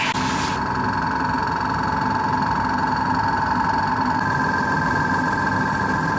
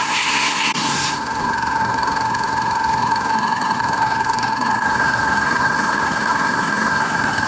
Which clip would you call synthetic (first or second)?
second